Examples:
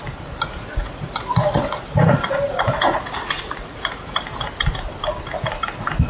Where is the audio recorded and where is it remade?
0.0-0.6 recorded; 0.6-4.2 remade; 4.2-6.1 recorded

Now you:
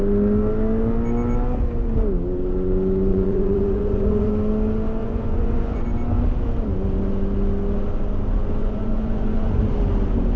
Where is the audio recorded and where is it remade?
0.0-3.1 recorded; 3.1-4.3 remade; 4.3-5.0 recorded; 5.0-5.8 remade; 5.8-8.6 recorded; 8.6-9.6 remade; 9.6-10.4 recorded

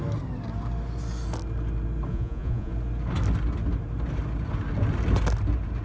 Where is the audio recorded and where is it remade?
0.0-2.1 recorded; 2.1-2.7 remade; 2.7-5.8 recorded

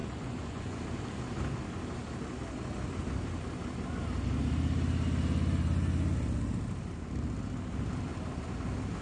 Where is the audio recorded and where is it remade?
0.0-0.8 remade; 0.8-9.0 recorded

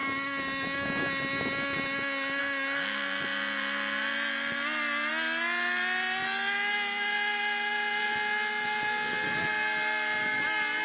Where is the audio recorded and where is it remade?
0.0-10.8 recorded